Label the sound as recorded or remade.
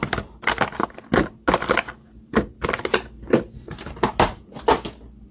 recorded